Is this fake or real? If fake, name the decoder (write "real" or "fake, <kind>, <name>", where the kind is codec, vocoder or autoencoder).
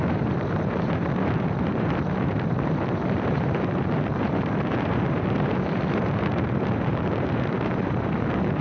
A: fake, vocoder, BigVGAN v2